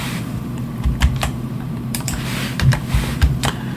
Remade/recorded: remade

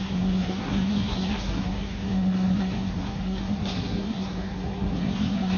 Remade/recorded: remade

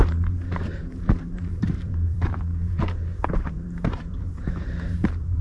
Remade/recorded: remade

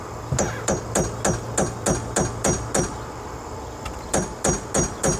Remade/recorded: recorded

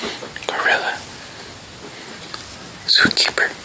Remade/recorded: recorded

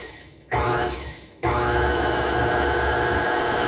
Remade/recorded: remade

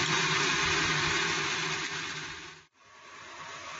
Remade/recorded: recorded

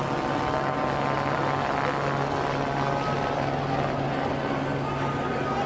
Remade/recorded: recorded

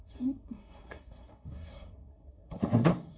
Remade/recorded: remade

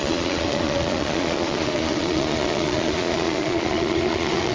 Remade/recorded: remade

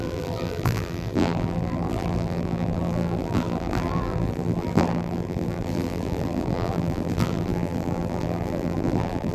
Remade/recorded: remade